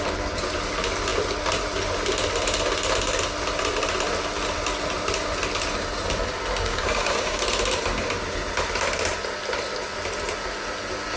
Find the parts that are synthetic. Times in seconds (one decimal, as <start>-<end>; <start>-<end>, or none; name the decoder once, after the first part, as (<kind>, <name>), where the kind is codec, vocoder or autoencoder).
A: 6.7-7.4 (codec, DAC)